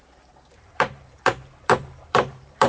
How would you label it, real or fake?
fake